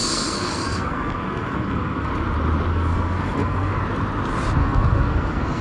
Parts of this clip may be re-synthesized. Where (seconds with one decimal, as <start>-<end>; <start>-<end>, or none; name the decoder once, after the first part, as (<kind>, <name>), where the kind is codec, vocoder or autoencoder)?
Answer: 0.0-2.1 (codec, SNAC); 2.7-3.8; 4.6-5.6